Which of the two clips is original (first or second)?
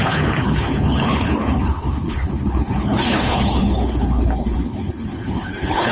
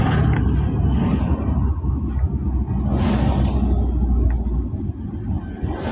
second